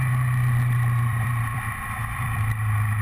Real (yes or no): no